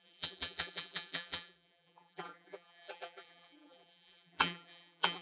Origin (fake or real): fake